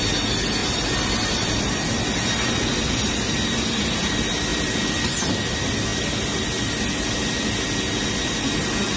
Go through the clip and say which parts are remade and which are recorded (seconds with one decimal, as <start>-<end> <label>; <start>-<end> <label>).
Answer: 0.0-0.6 recorded; 0.6-1.7 remade; 1.7-4.5 recorded; 4.5-5.3 remade; 5.3-9.0 recorded